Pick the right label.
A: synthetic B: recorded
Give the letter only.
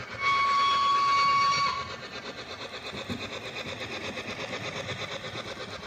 B